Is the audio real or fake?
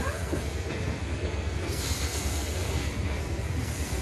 fake